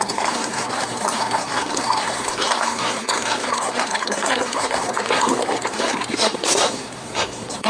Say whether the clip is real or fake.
fake